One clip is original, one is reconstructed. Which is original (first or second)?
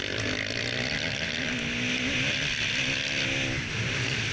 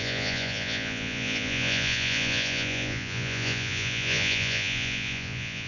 first